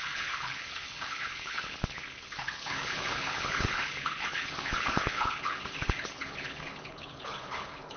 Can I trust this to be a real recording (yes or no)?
no